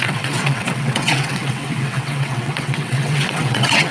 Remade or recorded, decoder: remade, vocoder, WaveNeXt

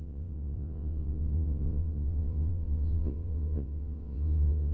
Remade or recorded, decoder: remade, vocoder, WaveNeXt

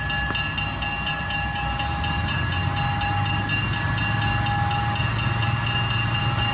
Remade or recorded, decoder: recorded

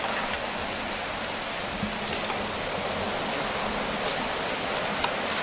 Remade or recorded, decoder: recorded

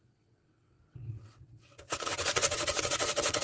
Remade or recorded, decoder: remade, vocoder, WaveNeXt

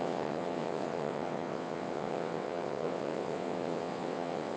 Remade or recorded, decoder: remade, vocoder, WaveNeXt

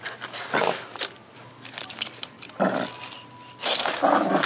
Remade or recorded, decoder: recorded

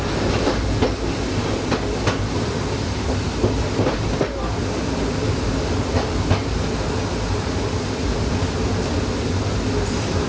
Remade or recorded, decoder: recorded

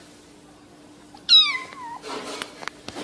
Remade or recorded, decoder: recorded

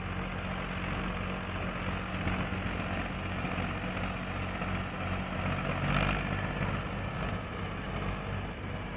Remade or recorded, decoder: recorded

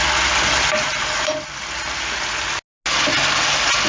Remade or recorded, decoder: recorded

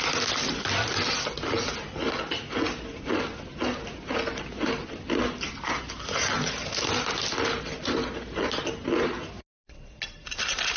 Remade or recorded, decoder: recorded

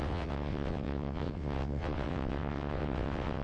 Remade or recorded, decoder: remade, vocoder, WaveNeXt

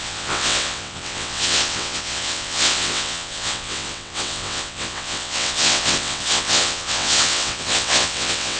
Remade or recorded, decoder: remade, vocoder, WaveNeXt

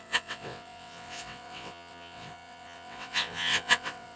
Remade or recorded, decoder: remade, vocoder, WaveNeXt